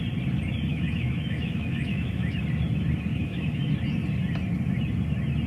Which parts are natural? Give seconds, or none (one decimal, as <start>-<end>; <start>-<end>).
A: 0.0-0.7; 2.4-3.1; 3.7-5.5